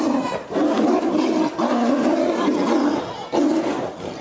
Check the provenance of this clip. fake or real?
real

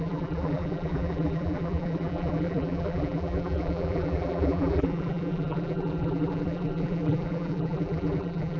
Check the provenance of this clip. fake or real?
fake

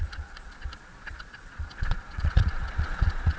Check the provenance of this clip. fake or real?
fake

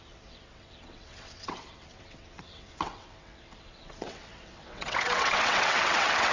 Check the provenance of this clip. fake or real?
fake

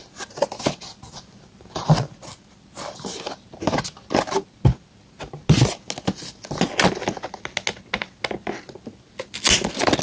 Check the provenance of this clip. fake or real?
real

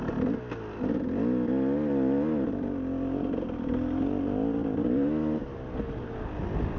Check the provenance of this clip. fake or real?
real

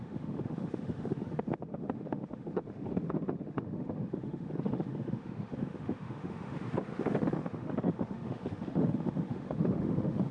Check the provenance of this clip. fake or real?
fake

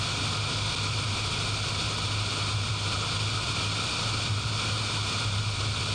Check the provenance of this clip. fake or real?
real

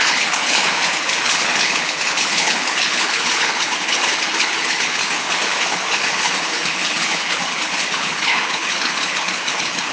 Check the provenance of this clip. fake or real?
fake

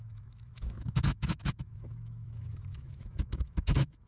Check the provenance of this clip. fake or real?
fake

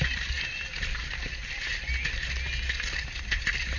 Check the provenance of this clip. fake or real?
real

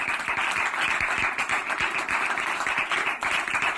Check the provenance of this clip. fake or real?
real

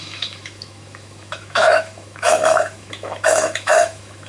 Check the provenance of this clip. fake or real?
fake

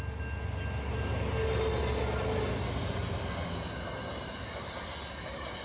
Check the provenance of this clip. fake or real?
real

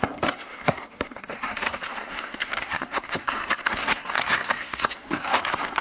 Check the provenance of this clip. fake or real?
fake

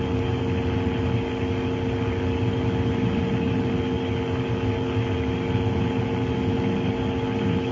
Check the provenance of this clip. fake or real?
real